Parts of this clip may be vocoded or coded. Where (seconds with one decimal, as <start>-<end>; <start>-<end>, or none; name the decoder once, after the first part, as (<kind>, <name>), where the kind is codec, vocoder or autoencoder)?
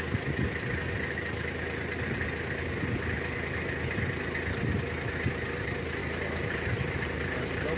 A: 6.0-7.8 (vocoder, BigVGAN v2)